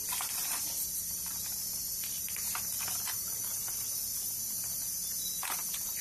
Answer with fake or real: real